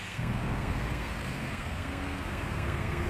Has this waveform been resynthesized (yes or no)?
yes